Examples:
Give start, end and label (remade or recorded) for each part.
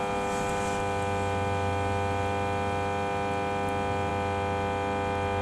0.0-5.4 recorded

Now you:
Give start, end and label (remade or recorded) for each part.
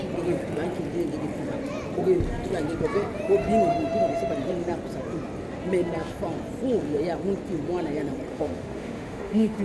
0.0-8.3 recorded; 8.3-9.6 remade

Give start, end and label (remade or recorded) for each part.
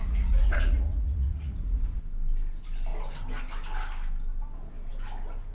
0.0-2.0 remade; 2.0-5.5 recorded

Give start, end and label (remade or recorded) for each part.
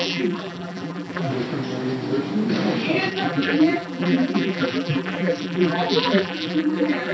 0.0-1.3 remade; 1.3-3.1 recorded; 3.1-7.1 remade